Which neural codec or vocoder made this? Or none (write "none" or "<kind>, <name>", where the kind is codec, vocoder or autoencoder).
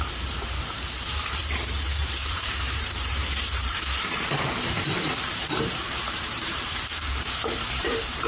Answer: vocoder, BigVGAN v2